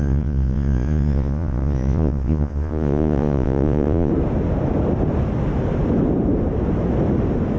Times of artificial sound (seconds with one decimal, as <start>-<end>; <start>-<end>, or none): 0.0-4.1